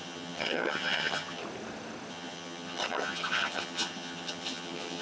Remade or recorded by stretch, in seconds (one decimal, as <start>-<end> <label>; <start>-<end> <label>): 0.0-1.4 remade; 1.4-2.1 recorded; 2.1-5.0 remade